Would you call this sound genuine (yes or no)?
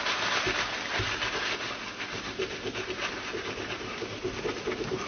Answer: yes